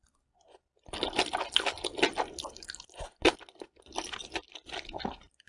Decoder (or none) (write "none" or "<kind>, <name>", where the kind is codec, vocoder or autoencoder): none